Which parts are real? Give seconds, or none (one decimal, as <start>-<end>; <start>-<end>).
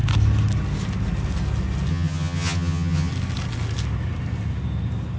0.0-1.9; 3.1-5.2